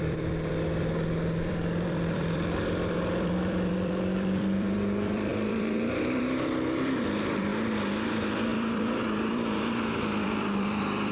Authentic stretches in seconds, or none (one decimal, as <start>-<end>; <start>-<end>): 7.5-8.1